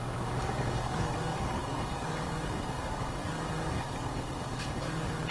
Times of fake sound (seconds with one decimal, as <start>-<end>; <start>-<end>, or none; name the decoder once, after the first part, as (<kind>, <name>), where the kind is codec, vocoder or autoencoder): 0.0-5.3 (codec, DAC)